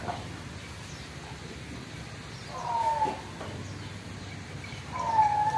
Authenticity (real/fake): real